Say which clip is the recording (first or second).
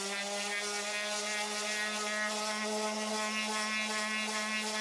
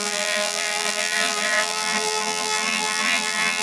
first